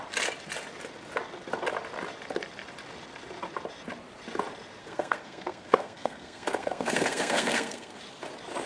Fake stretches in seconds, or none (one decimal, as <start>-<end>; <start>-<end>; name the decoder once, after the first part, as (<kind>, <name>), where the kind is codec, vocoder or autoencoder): 4.8-8.0 (codec, SNAC)